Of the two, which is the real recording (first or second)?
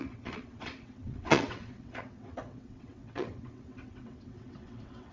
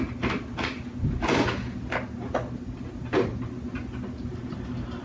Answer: second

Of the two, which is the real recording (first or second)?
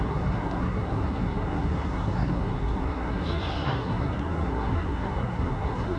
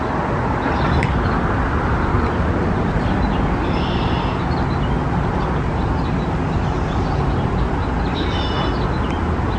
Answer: second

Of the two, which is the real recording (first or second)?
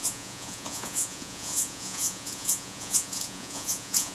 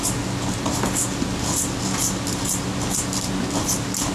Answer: second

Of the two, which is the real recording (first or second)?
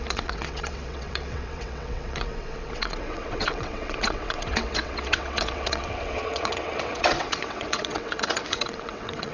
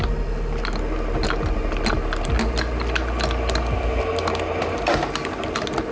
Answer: second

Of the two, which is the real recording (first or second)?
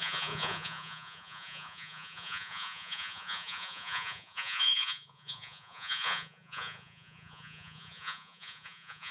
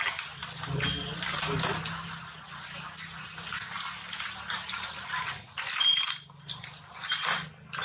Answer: second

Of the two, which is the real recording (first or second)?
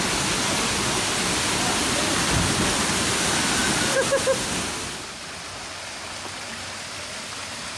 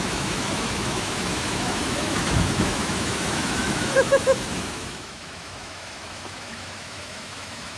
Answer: first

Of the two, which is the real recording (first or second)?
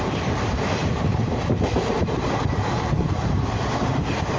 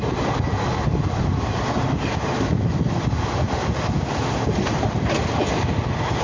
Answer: second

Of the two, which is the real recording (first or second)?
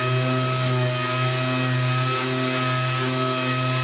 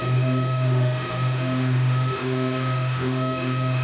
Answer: first